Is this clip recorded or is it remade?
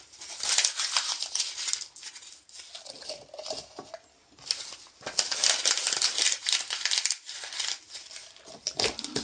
recorded